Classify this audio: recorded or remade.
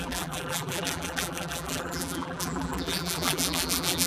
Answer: remade